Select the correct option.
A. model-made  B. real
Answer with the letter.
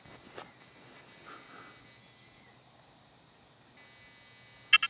B